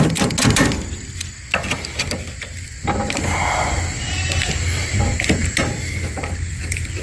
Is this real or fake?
real